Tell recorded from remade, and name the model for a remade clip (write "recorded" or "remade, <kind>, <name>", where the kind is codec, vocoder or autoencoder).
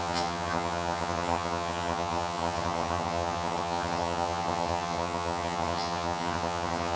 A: remade, vocoder, HiFi-GAN